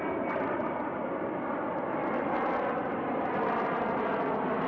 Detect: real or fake real